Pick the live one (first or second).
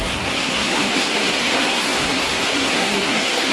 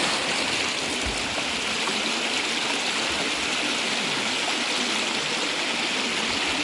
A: second